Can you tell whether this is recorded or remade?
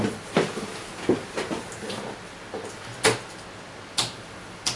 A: recorded